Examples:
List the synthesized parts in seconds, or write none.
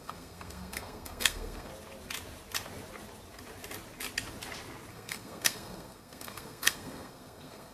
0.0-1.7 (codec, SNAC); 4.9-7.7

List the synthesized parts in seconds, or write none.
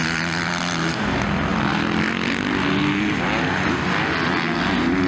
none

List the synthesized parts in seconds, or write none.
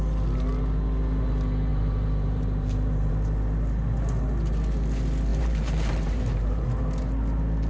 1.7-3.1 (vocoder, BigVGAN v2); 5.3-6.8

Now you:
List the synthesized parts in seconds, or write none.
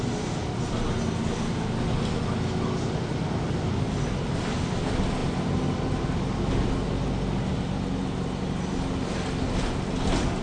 none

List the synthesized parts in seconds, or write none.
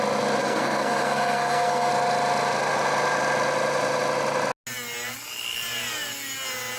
0.4-1.9 (codec, SNAC)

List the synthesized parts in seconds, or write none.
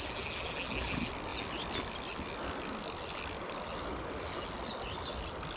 none